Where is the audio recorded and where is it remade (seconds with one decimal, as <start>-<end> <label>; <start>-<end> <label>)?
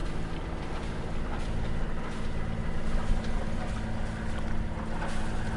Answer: 0.0-2.6 recorded; 2.6-3.7 remade; 3.7-5.6 recorded